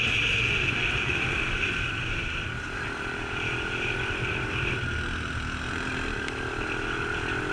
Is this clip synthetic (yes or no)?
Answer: no